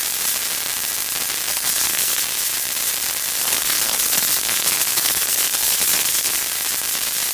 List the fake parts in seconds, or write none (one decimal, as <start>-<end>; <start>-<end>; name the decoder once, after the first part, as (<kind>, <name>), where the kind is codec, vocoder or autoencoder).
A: 1.5-2.2 (codec, SNAC); 3.4-6.4